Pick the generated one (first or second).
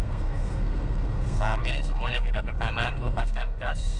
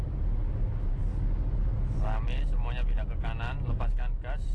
first